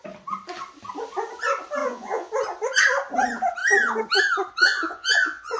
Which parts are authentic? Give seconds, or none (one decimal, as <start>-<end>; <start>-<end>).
0.0-1.8; 2.3-4.6